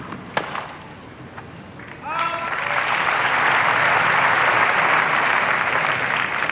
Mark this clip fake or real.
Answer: real